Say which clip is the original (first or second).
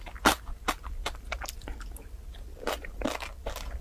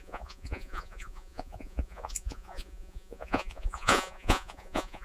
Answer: first